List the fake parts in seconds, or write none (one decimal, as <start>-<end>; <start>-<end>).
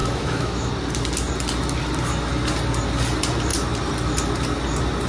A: 0.0-0.7